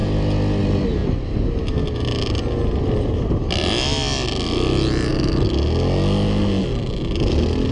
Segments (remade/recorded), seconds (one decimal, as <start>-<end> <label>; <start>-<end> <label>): 0.0-7.7 recorded